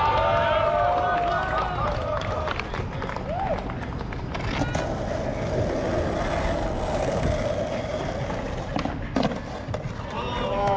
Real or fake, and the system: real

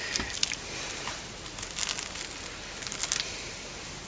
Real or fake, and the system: real